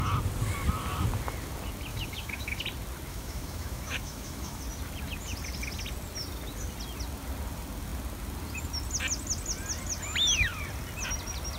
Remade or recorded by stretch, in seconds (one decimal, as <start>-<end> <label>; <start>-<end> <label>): 0.0-1.9 recorded; 1.9-2.6 remade; 2.6-3.1 recorded; 3.1-4.6 remade; 4.6-11.6 recorded